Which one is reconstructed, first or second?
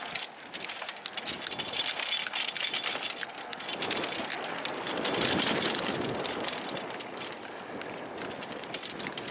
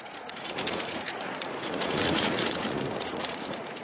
second